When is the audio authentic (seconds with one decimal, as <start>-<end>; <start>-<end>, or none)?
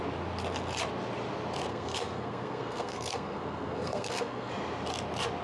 0.0-1.7; 4.5-5.4